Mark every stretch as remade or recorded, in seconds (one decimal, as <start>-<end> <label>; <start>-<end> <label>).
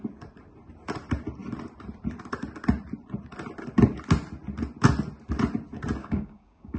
0.0-6.0 recorded; 6.0-6.8 remade